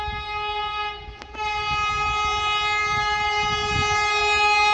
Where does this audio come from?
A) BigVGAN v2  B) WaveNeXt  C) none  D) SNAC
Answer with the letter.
C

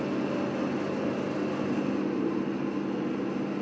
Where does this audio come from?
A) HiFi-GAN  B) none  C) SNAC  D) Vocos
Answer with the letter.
B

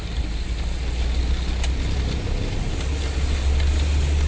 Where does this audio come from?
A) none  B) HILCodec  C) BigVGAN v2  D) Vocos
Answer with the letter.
A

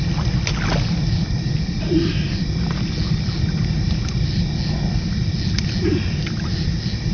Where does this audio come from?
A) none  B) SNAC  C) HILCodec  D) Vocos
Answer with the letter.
A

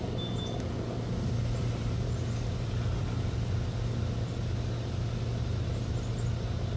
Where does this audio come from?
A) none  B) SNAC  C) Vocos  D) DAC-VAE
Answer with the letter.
A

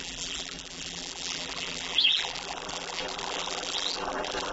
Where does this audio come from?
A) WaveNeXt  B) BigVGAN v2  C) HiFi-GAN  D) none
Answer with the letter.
B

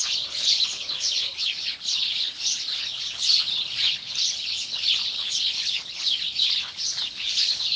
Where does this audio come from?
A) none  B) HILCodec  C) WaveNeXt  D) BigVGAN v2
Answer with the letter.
B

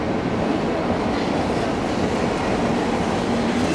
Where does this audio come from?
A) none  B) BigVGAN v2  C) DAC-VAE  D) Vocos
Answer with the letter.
A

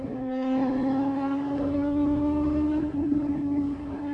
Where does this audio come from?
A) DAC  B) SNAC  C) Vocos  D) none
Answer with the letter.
B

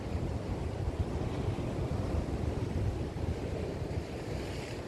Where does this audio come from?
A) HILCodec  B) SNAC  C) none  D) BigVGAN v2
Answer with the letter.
C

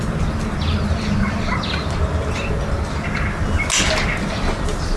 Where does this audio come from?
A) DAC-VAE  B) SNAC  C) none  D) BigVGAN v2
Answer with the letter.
C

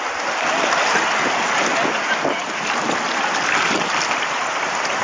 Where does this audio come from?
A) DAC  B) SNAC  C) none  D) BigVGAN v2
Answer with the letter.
C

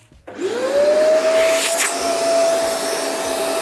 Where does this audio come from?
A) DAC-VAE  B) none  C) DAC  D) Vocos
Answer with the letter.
B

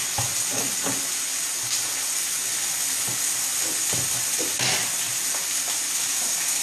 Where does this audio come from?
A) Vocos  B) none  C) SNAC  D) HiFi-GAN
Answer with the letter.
B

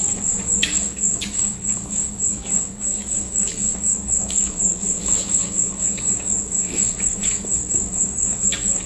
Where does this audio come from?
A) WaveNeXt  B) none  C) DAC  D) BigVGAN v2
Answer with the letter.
C